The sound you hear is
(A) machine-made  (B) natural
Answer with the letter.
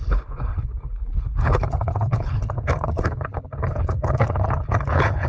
A